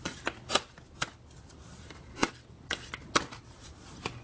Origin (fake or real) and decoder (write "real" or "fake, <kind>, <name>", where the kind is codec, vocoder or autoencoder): real